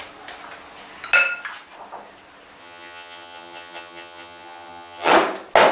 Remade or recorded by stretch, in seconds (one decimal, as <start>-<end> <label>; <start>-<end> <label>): 0.0-2.6 recorded; 2.6-5.1 remade; 5.1-5.7 recorded